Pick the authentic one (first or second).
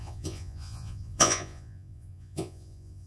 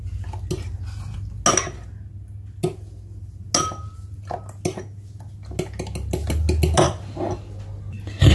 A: second